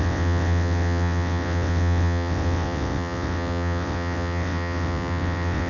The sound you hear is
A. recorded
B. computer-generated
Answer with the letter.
B